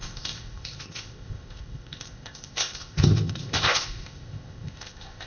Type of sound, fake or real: fake